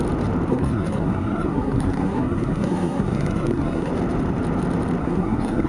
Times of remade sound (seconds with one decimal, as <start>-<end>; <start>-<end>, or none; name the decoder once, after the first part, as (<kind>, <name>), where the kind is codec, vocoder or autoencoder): 0.5-3.9 (codec, SNAC); 5.0-5.7